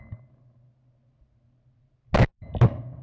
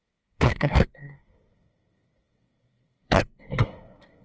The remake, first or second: second